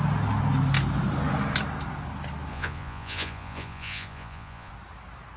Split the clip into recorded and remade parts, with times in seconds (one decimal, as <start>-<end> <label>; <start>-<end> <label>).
0.0-2.5 recorded; 2.5-4.7 remade; 4.7-5.4 recorded